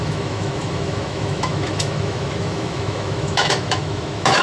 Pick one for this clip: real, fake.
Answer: fake